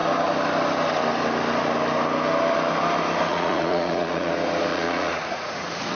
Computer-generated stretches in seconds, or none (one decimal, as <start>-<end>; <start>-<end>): 3.3-4.3; 4.7-5.9